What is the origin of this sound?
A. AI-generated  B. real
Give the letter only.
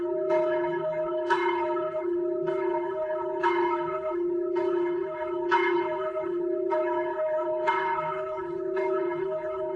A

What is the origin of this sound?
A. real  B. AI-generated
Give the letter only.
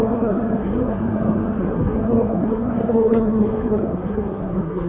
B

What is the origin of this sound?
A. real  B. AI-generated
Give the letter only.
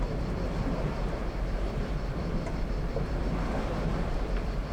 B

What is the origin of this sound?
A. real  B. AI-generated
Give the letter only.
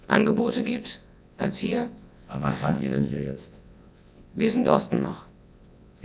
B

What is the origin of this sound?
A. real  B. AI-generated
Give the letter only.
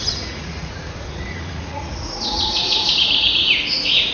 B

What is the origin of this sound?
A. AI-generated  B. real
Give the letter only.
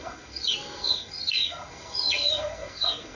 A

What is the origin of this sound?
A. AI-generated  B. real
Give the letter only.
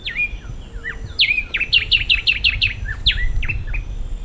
B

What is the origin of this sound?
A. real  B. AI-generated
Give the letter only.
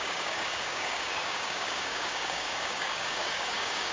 B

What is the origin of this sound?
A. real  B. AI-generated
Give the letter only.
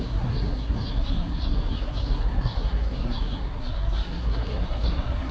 B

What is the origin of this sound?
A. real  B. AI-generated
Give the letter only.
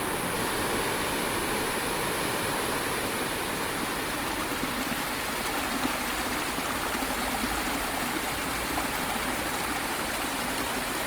A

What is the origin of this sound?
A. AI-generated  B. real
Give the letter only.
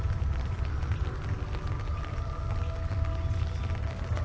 B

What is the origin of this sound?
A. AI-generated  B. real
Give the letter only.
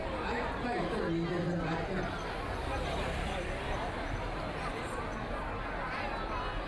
B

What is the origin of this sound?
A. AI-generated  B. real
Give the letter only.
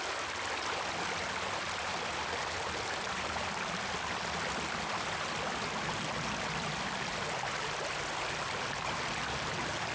B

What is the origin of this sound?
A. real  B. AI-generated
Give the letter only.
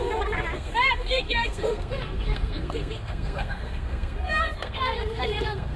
B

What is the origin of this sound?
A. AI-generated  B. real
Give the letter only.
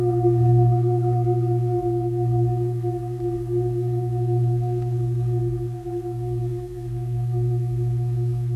A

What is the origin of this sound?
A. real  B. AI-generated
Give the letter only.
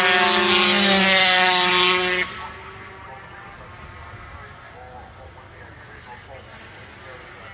A